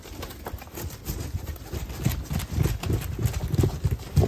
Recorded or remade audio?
recorded